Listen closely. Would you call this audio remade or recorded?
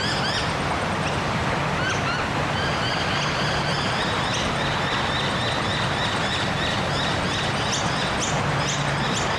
recorded